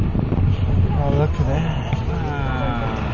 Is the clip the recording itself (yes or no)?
yes